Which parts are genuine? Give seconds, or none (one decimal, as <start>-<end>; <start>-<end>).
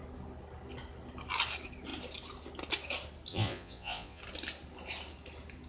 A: 0.0-3.3; 4.2-5.7